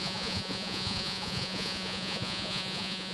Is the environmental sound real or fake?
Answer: fake